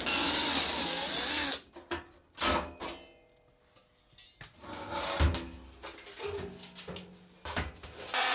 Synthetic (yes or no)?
no